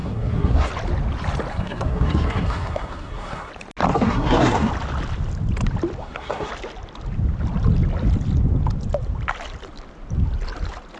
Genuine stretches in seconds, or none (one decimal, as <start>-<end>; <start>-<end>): 0.7-1.5; 3.5-3.9; 4.7-6.0; 6.5-11.0